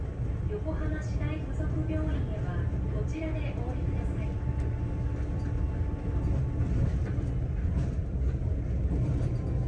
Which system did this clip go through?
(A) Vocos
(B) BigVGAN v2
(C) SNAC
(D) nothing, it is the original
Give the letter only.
D